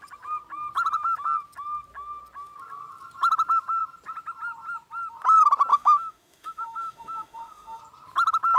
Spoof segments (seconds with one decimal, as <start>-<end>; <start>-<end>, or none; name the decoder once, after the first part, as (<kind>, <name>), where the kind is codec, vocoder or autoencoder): 5.7-7.8 (autoencoder, DAC-VAE)